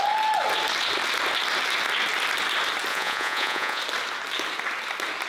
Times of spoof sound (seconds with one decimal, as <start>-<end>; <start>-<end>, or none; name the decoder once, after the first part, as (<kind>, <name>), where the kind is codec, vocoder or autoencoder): 2.9-3.8 (vocoder, Vocos)